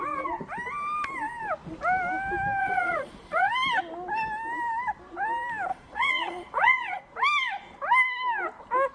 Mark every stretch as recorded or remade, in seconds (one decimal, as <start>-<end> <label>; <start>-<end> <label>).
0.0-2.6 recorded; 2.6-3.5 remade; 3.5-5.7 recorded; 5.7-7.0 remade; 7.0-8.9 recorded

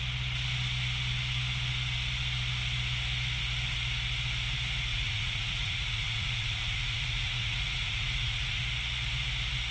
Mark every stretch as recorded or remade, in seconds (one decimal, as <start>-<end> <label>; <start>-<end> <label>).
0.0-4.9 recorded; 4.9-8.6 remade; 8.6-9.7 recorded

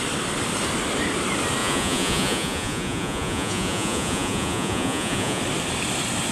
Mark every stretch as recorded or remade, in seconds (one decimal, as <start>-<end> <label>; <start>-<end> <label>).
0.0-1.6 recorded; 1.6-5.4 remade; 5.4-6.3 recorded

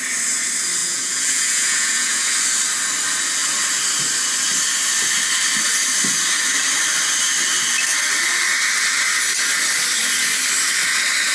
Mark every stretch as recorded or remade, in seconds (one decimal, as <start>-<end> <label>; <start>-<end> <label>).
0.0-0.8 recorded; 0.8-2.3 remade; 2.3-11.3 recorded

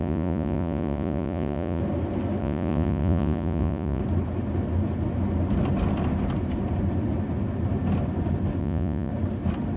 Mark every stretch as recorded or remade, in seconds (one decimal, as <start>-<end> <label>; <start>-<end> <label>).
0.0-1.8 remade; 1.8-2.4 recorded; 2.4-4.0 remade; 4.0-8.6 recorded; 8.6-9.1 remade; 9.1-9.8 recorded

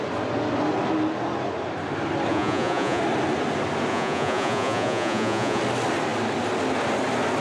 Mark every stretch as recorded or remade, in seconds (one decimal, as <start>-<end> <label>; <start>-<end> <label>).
0.0-2.3 recorded; 2.3-3.0 remade; 3.0-3.9 recorded; 3.9-5.6 remade; 5.6-7.4 recorded